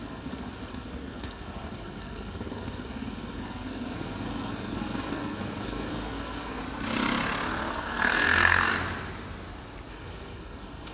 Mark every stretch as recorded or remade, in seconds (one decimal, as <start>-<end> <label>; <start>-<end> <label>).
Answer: 0.0-6.6 remade; 6.6-7.7 recorded; 7.7-8.7 remade; 8.7-9.9 recorded; 9.9-10.9 remade